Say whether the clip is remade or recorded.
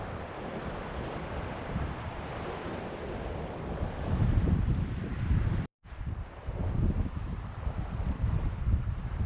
remade